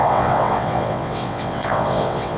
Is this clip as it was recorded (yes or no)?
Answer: no